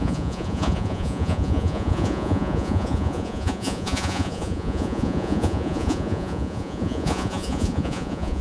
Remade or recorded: remade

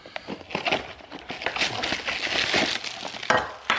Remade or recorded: recorded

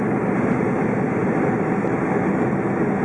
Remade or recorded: recorded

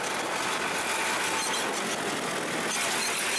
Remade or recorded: recorded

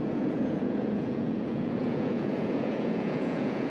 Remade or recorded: remade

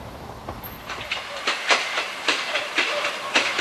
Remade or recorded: recorded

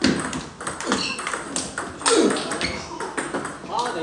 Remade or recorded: recorded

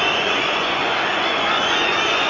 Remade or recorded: remade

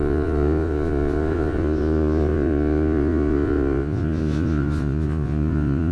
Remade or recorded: remade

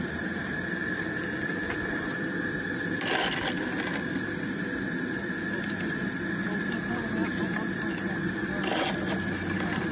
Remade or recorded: recorded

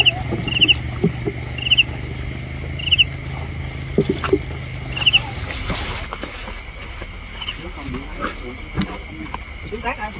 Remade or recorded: recorded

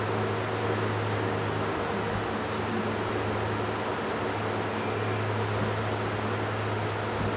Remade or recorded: recorded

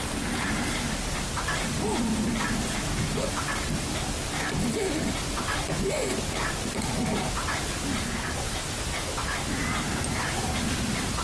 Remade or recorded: recorded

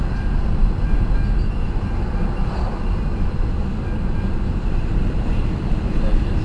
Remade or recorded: recorded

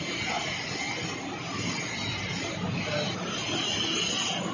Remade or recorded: recorded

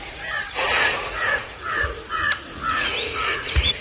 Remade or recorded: remade